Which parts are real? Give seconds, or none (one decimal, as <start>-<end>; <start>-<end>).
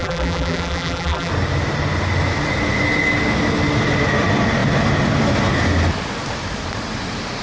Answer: 1.3-7.4